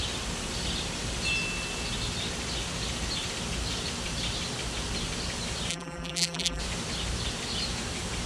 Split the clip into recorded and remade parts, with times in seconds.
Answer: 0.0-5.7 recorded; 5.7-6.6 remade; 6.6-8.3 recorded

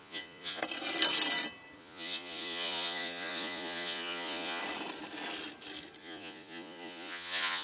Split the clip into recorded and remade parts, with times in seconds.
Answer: 0.0-0.6 remade; 0.6-1.8 recorded; 1.8-4.6 remade; 4.6-6.0 recorded; 6.0-7.6 remade

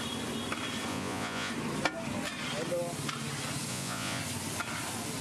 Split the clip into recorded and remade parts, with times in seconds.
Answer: 0.0-0.9 recorded; 0.9-1.5 remade; 1.5-3.7 recorded; 3.7-4.2 remade; 4.2-5.2 recorded

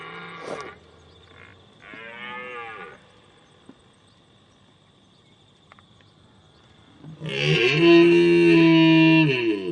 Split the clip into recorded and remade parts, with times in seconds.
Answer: 0.0-9.7 recorded

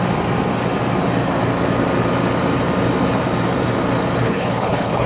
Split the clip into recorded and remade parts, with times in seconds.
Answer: 0.0-4.2 recorded; 4.2-5.1 remade